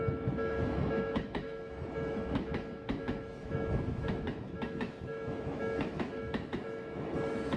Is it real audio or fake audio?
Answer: fake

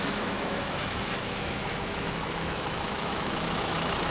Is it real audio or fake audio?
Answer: fake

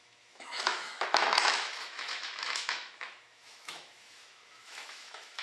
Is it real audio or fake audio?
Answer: fake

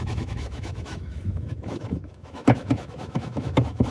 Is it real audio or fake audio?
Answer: fake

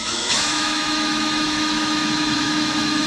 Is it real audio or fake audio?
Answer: fake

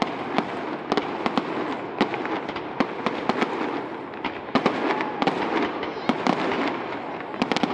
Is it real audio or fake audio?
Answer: real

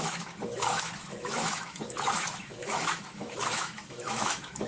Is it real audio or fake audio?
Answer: fake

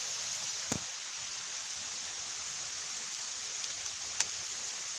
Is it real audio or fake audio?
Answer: real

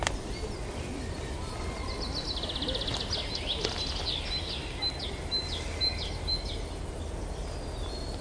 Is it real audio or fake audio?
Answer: real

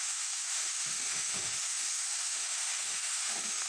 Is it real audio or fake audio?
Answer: fake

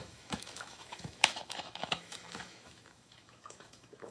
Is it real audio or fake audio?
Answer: fake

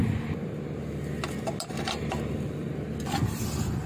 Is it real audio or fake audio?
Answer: real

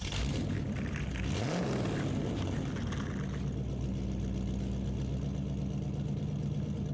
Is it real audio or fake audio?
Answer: real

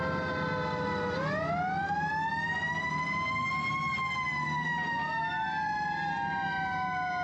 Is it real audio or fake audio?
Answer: real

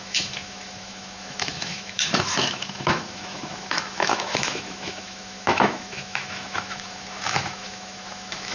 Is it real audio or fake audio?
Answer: fake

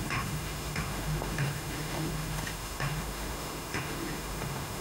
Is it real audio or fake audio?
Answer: fake